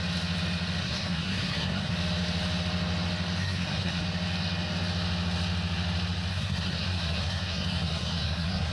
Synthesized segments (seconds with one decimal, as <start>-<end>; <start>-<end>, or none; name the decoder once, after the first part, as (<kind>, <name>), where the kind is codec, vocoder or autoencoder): 0.8-1.9 (codec, SNAC); 3.4-4.0; 6.3-8.7